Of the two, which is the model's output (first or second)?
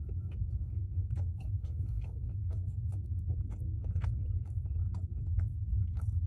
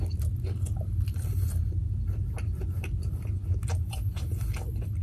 first